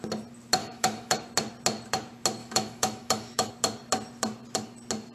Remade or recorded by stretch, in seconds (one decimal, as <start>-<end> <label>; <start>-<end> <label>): 0.0-0.6 recorded; 0.6-1.2 remade; 1.2-2.4 recorded; 2.4-3.5 remade; 3.5-5.1 recorded